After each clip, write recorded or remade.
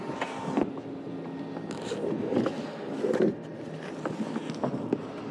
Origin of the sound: recorded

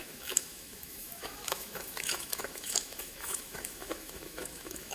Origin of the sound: remade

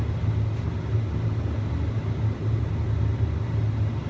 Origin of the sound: recorded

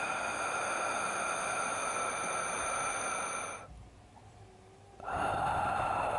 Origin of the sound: recorded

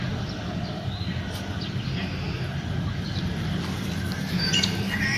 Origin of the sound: recorded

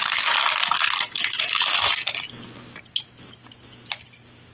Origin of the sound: recorded